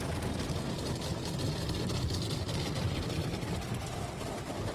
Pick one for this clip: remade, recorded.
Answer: recorded